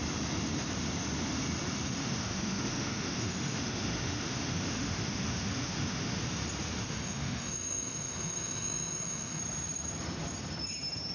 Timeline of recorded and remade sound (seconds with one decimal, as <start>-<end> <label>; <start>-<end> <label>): 0.0-2.0 recorded; 2.0-6.2 remade; 6.2-6.8 recorded; 6.8-9.4 remade; 9.4-11.1 recorded